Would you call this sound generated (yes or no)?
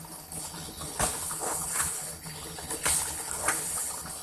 yes